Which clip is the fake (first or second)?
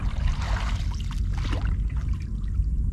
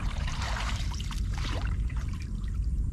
second